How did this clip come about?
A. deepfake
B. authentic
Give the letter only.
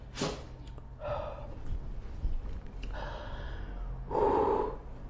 B